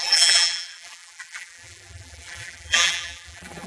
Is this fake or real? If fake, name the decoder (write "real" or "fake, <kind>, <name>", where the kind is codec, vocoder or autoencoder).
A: fake, vocoder, BigVGAN v2